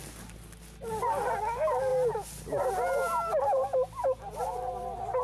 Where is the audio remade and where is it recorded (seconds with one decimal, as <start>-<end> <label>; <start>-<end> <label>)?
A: 0.0-5.2 recorded